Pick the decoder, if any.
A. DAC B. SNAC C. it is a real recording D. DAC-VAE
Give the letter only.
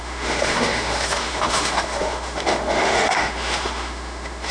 D